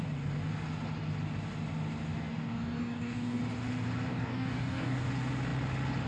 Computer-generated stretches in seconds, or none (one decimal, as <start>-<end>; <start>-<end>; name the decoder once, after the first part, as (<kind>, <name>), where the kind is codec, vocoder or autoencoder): 2.3-3.4 (codec, DAC); 4.1-5.1